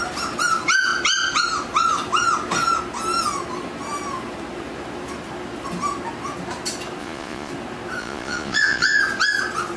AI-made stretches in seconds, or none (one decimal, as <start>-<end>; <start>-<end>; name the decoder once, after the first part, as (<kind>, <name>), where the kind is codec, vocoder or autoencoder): 7.0-7.5 (vocoder, Vocos); 8.0-9.0